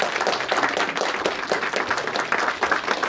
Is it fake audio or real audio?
real